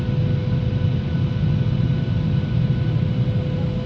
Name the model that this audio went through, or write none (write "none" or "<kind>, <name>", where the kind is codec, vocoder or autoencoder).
none